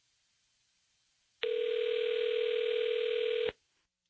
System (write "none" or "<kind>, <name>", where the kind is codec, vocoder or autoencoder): none